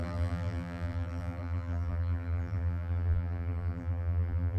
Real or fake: fake